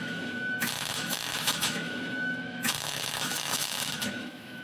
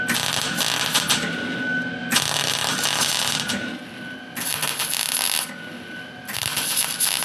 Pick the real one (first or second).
second